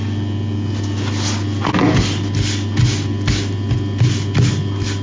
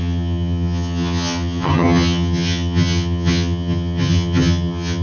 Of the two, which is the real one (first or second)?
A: first